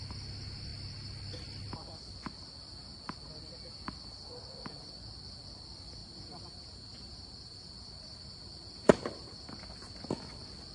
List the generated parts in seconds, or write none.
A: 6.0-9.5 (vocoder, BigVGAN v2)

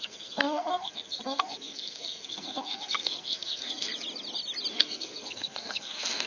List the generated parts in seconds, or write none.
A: 0.0-3.9 (codec, SNAC); 4.7-6.3